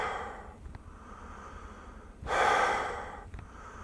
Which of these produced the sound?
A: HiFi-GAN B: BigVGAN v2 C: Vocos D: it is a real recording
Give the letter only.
B